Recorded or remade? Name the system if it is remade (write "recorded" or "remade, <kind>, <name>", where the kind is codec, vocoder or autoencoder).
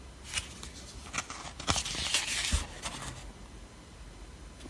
recorded